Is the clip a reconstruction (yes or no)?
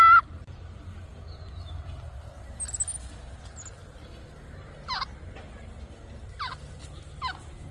no